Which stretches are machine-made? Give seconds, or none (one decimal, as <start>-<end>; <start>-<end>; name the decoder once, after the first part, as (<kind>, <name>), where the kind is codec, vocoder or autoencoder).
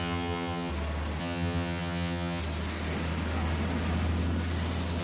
0.0-0.7 (vocoder, HiFi-GAN); 1.2-2.4